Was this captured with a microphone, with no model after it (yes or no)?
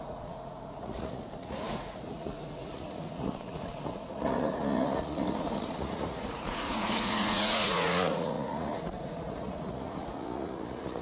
no